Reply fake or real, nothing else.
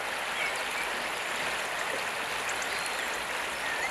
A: real